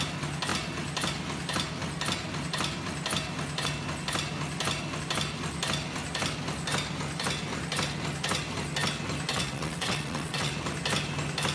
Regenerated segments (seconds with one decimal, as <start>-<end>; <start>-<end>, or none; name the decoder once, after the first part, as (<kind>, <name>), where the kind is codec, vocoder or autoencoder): 9.3-10.5 (vocoder, WaveNeXt)